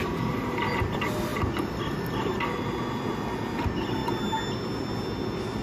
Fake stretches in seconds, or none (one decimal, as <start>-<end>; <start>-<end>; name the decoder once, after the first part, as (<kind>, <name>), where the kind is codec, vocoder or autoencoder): none